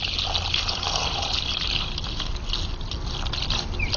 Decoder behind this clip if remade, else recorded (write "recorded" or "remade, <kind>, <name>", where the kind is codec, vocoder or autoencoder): recorded